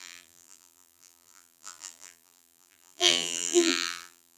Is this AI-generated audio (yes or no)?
yes